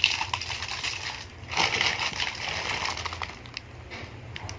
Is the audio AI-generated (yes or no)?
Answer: no